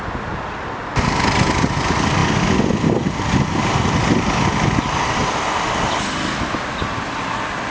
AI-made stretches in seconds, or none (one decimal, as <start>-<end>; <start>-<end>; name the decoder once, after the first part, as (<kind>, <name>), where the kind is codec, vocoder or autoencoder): none